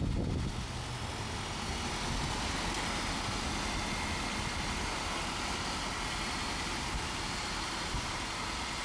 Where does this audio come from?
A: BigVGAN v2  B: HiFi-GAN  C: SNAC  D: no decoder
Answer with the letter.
D